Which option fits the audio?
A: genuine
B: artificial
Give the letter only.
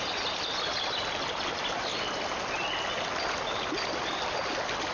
A